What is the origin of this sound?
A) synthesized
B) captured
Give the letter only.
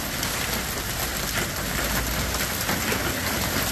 B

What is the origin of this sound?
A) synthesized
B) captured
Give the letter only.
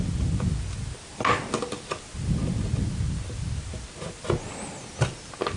B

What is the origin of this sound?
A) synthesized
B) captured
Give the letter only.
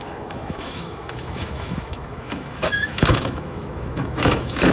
A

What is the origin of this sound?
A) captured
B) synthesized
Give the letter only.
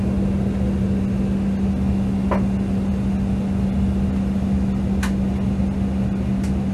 A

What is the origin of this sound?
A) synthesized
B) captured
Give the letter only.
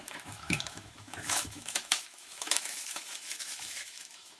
A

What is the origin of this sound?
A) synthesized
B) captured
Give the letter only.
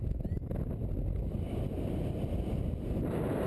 B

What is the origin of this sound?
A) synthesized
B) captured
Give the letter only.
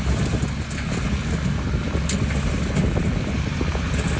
B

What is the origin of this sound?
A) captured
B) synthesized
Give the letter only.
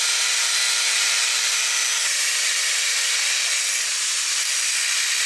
A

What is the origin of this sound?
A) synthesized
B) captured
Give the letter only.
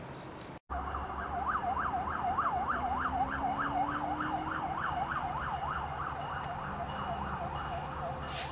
B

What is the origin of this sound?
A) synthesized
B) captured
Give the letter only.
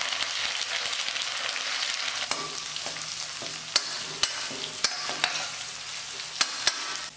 B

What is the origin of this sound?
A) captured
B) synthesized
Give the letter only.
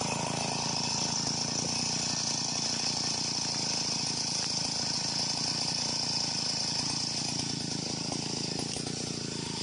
A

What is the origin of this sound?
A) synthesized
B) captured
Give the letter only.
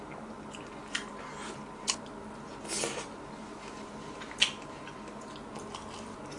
B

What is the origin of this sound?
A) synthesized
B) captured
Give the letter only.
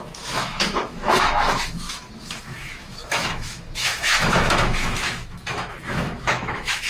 A